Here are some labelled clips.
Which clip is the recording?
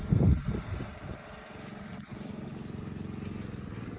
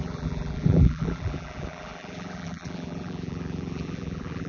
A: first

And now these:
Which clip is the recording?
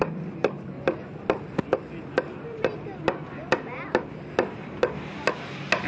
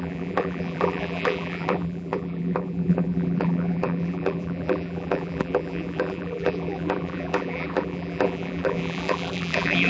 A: first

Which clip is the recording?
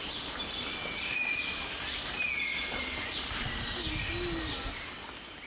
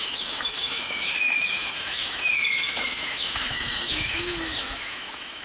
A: first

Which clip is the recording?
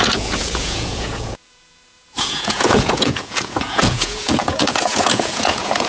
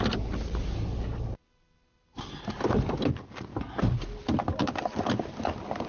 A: second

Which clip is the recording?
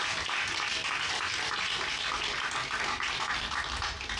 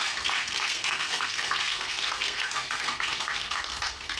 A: first